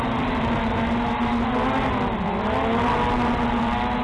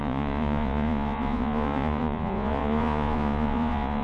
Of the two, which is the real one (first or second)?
first